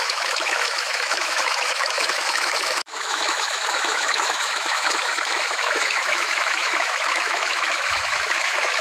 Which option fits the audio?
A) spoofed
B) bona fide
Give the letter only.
A